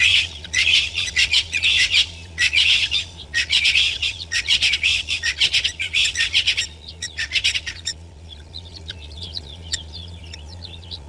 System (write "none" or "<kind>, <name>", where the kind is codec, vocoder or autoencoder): vocoder, Vocos